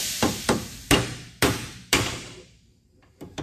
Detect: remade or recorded remade